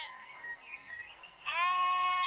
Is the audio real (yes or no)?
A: no